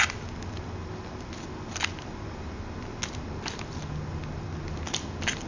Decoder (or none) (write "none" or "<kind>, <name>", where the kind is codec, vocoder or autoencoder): none